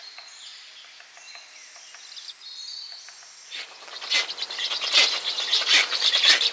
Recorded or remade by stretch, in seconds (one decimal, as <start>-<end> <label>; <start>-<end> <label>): 0.0-6.5 recorded